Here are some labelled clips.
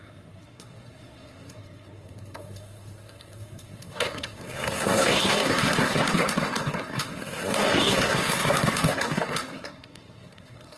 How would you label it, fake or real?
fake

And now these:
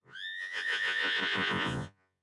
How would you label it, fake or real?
fake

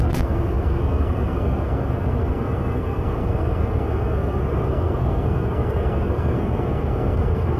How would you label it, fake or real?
fake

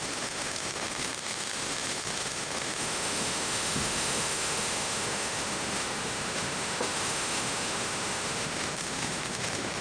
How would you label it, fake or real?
fake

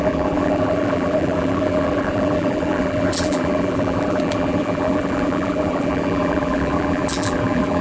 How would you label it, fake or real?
fake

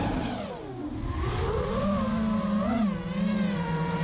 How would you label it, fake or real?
real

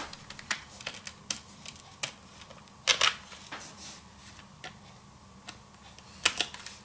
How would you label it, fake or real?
real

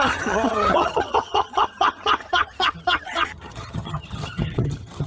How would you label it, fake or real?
fake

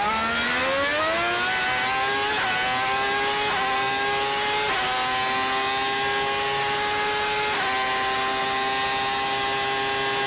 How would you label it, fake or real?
real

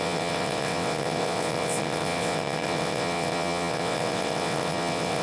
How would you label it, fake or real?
fake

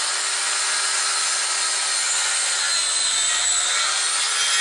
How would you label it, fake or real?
real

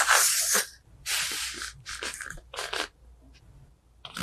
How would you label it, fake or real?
real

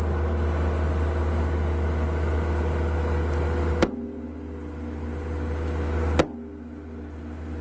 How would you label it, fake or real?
real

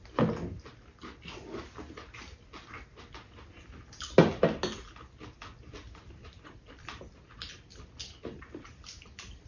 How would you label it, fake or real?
real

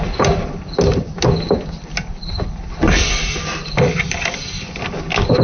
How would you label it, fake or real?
real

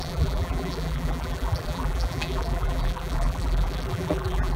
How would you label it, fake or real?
fake